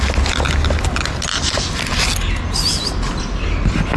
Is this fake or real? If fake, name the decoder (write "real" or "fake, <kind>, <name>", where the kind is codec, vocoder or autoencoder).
real